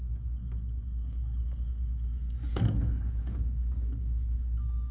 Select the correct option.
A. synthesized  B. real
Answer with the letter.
A